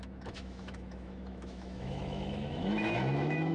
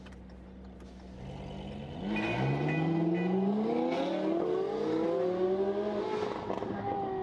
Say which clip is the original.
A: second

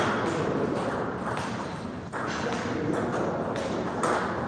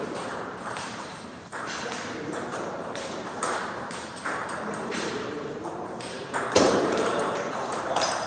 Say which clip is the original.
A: first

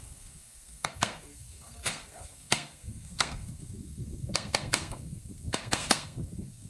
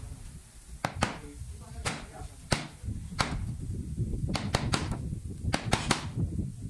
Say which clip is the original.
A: second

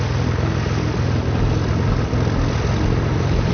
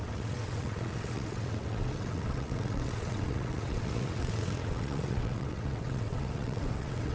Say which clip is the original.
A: first